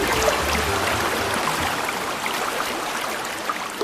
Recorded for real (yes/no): yes